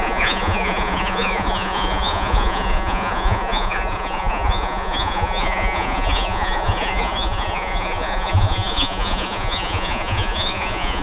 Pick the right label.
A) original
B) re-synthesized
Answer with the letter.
B